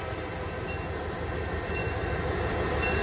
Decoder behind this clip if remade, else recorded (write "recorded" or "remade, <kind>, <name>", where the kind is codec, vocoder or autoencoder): remade, vocoder, BigVGAN v2